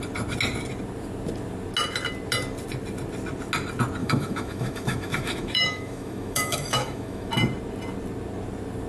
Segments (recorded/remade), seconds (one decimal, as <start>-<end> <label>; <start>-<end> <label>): 0.0-4.0 recorded; 4.0-7.3 remade; 7.3-8.9 recorded